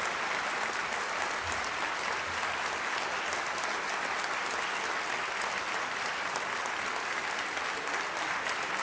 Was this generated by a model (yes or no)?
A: no